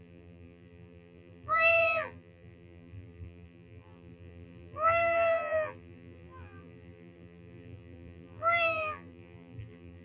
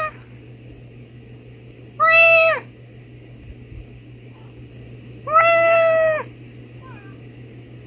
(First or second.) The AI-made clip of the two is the first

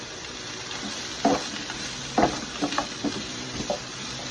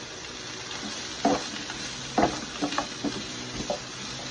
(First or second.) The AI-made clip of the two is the first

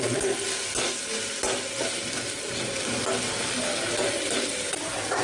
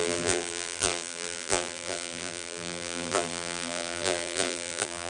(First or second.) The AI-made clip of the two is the second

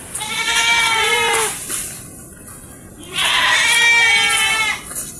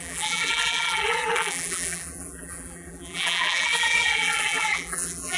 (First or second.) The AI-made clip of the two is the second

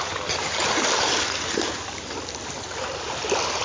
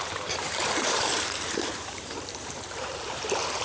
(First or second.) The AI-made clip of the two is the second